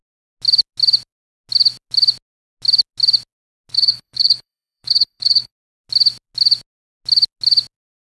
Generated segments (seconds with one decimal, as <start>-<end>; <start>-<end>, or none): 3.7-5.5